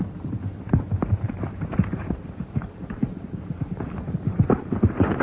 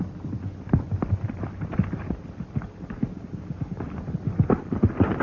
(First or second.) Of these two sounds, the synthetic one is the first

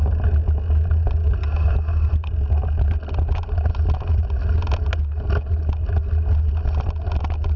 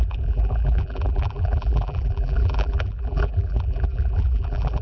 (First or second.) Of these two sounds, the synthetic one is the second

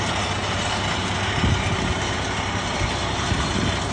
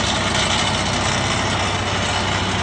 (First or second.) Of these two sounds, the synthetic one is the first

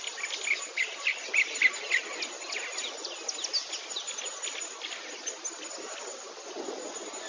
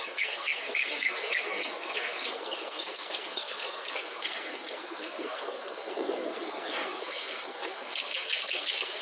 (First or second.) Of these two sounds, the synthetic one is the second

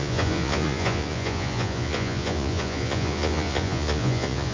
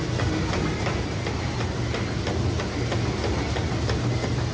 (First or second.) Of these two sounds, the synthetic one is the first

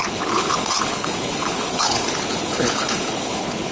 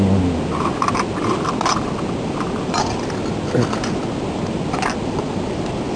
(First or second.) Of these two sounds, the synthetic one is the first